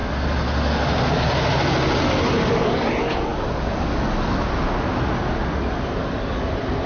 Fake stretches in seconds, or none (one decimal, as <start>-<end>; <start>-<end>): none